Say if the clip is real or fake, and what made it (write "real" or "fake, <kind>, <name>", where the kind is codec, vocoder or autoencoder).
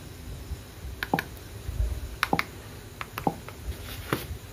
real